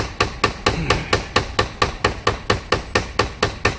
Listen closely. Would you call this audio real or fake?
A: real